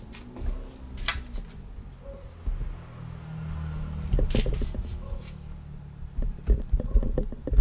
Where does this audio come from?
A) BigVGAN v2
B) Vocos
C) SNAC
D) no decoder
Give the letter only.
D